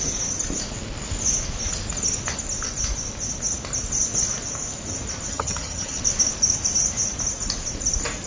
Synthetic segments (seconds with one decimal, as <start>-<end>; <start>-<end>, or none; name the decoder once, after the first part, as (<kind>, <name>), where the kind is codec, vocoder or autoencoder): 5.3-6.0 (vocoder, HiFi-GAN)